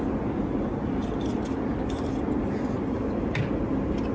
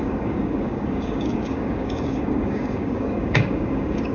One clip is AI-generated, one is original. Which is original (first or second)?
first